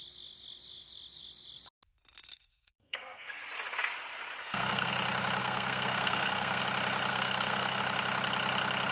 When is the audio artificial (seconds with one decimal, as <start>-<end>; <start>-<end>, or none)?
2.3-3.3; 4.4-4.9; 5.4-6.6; 7.1-7.8